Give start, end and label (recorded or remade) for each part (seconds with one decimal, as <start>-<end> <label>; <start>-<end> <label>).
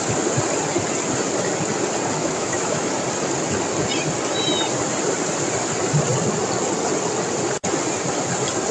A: 0.0-2.2 recorded; 2.2-2.9 remade; 2.9-8.7 recorded